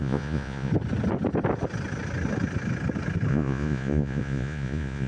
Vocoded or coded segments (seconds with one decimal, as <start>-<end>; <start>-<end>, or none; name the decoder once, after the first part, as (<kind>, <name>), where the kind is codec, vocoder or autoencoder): 0.0-0.7 (vocoder, Vocos); 3.3-5.1